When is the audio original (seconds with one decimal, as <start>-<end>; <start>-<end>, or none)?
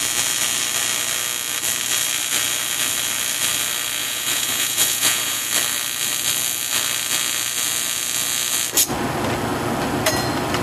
0.0-4.0; 5.5-10.6